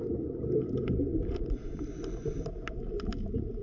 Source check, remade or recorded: recorded